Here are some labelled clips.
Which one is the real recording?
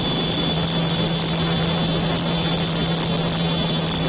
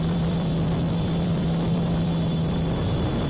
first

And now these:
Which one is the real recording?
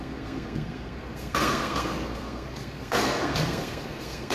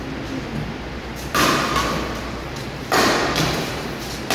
second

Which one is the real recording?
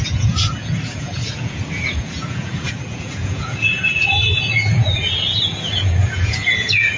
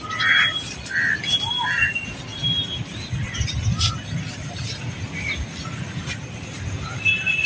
second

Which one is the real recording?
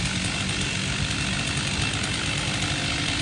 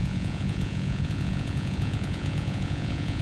first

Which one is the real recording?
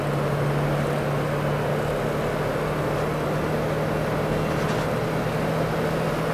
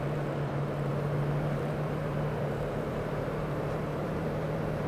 first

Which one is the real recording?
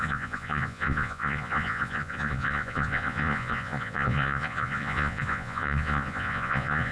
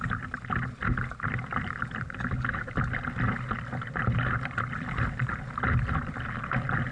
second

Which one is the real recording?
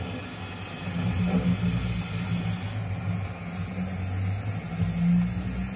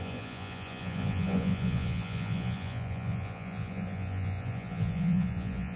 first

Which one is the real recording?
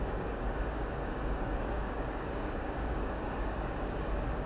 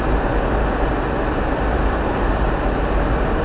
second